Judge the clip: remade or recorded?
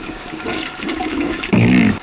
remade